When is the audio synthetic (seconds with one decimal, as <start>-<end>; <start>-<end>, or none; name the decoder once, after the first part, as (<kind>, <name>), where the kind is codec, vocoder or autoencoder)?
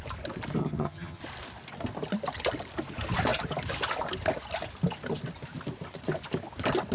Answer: 0.6-1.2 (vocoder, HiFi-GAN)